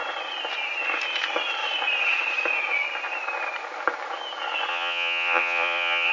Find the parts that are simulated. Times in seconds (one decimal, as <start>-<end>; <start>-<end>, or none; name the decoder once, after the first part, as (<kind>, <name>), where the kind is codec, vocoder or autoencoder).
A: 4.7-6.1 (vocoder, Vocos)